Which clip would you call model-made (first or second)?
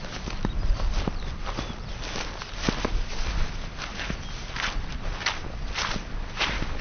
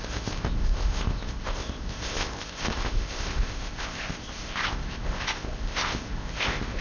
second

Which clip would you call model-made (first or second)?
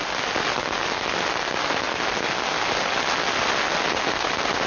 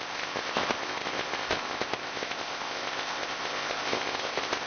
second